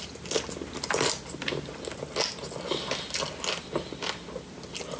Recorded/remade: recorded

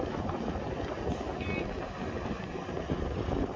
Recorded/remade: recorded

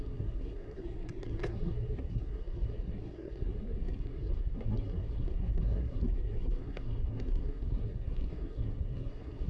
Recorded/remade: remade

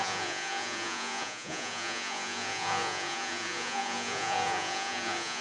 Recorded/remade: remade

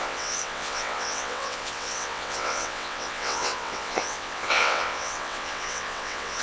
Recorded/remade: remade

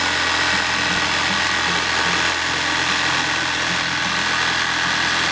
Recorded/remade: recorded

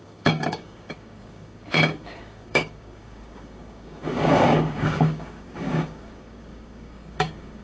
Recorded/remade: remade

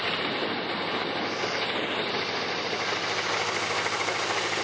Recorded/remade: remade